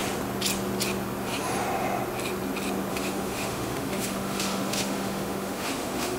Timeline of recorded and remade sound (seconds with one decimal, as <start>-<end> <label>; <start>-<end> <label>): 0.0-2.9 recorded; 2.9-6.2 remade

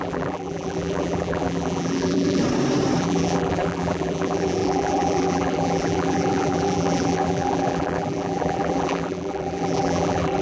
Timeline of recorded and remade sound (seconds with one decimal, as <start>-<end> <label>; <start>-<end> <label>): 0.0-2.4 remade; 2.4-3.0 recorded; 3.0-10.4 remade

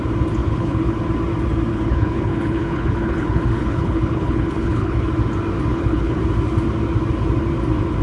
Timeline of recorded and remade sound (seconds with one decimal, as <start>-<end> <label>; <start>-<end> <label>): 0.0-0.4 recorded; 0.4-1.0 remade; 1.0-1.7 recorded; 1.7-5.1 remade; 5.1-5.7 recorded; 5.7-6.2 remade; 6.2-8.0 recorded